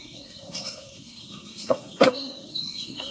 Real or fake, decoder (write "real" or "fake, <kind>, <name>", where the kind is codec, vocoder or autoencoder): fake, codec, SNAC